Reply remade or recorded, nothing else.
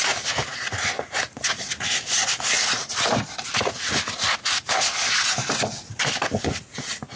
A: recorded